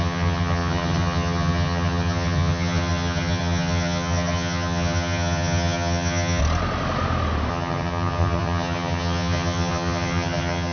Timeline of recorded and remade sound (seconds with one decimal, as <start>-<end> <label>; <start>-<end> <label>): 0.0-6.4 remade; 6.4-7.5 recorded; 7.5-10.7 remade